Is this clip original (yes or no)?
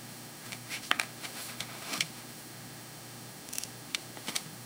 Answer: no